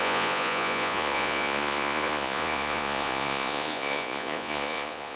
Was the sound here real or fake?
fake